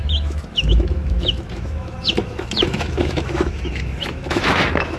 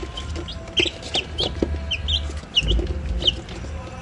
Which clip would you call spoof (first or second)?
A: first